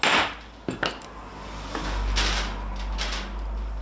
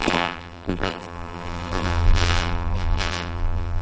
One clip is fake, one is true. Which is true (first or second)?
first